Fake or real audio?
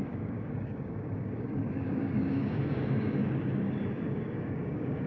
fake